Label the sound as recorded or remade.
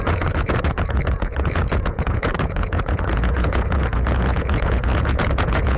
remade